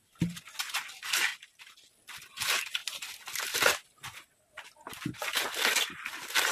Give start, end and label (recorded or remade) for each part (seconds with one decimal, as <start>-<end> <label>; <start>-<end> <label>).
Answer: 0.0-6.5 recorded